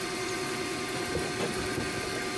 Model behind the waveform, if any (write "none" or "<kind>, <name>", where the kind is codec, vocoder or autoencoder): none